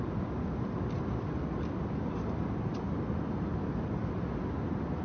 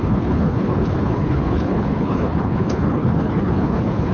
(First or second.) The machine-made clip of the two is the second